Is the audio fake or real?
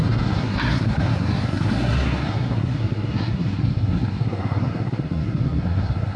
fake